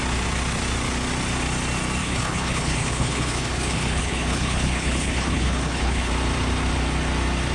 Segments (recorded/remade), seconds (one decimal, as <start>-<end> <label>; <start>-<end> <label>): 0.0-2.0 recorded; 2.0-6.1 remade; 6.1-7.5 recorded